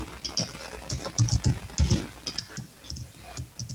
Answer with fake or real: real